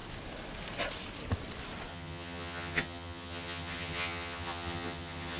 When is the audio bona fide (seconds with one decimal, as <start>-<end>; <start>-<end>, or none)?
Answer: 0.0-1.9

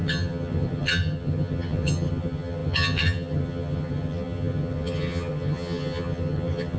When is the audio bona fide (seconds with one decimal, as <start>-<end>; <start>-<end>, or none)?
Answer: none

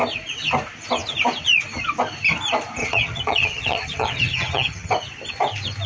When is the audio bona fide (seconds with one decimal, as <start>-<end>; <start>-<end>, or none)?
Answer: 0.0-2.8; 4.9-5.9